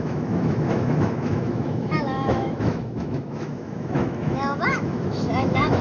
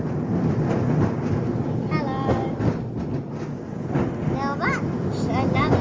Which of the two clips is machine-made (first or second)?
first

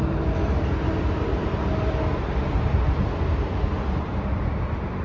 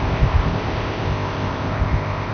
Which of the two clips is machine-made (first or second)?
second